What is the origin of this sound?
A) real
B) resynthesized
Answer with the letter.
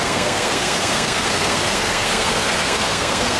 B